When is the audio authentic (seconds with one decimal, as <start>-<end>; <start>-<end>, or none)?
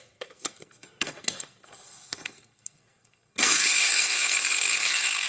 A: none